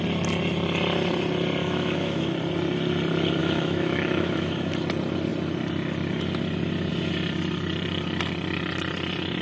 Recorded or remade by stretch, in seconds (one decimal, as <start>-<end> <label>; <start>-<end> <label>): 0.0-1.6 recorded; 1.6-2.3 remade; 2.3-3.4 recorded; 3.4-4.7 remade; 4.7-9.4 recorded